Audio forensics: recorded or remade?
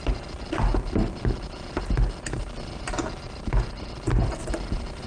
recorded